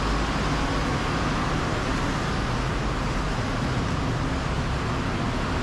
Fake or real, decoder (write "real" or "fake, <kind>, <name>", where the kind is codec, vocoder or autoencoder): real